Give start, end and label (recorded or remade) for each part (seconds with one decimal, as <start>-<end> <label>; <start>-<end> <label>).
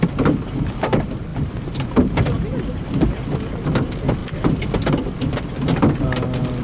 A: 0.0-1.3 recorded; 1.3-3.1 remade; 3.1-6.6 recorded